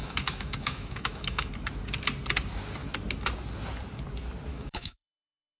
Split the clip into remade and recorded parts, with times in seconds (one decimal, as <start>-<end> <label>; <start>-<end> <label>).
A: 0.0-1.5 remade; 1.5-4.5 recorded; 4.5-5.6 remade